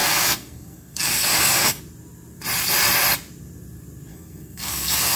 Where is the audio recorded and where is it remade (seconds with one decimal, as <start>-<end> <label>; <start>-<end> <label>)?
0.0-1.8 remade; 1.8-4.1 recorded; 4.1-5.2 remade